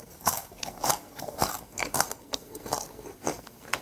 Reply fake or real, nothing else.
fake